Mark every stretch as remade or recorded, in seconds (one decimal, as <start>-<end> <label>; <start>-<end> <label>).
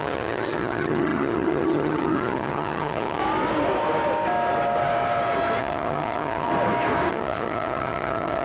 0.0-3.2 remade; 3.2-5.6 recorded; 5.6-6.5 remade; 6.5-7.1 recorded; 7.1-8.4 remade